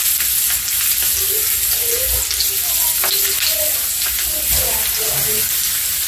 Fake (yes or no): no